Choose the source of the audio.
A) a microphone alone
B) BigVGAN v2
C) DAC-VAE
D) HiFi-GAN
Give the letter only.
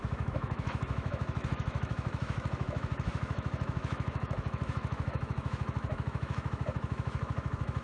C